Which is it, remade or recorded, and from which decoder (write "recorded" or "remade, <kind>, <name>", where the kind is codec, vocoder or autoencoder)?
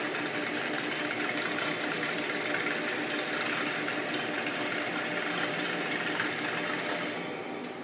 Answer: recorded